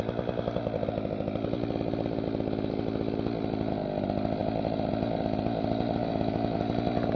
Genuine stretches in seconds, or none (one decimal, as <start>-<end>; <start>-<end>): 0.0-6.0; 6.6-7.2